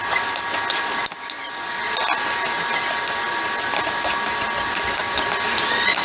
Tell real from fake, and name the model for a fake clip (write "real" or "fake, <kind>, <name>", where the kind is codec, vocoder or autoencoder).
real